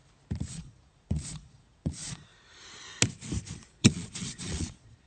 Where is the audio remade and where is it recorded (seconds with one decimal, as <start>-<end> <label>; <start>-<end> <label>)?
0.0-0.5 recorded; 0.5-2.3 remade; 2.3-3.8 recorded; 3.8-5.1 remade